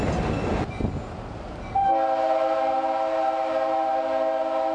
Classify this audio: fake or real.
real